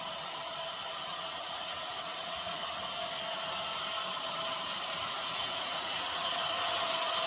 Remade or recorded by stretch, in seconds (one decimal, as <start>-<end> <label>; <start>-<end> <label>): 0.0-1.1 recorded; 1.1-2.7 remade; 2.7-5.0 recorded; 5.0-6.3 remade; 6.3-7.3 recorded